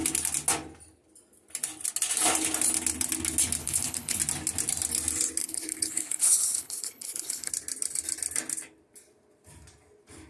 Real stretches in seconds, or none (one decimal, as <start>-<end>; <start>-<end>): 0.0-3.6; 4.2-5.4; 7.5-10.3